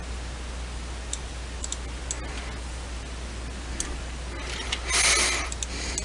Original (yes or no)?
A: yes